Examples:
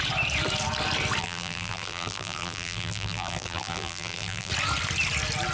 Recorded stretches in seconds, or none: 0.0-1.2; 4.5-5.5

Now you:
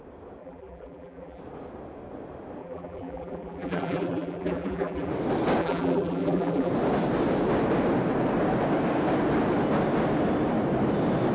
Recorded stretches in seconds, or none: 0.0-0.4; 1.4-2.6; 5.1-5.6; 6.7-11.3

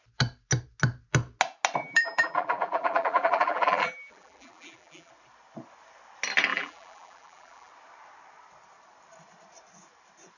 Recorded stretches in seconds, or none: 0.0-1.8; 5.1-6.5; 7.7-10.4

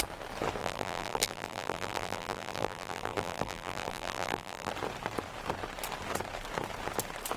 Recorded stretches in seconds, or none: 0.0-0.6; 4.7-7.4

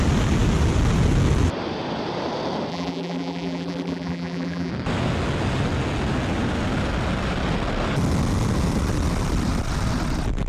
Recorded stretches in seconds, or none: 0.0-2.7; 4.7-10.5

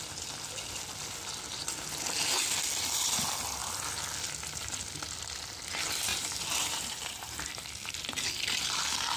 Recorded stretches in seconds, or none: 0.0-6.1; 7.5-9.2

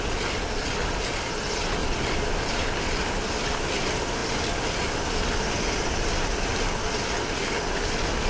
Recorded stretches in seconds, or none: 0.0-1.8; 2.8-8.3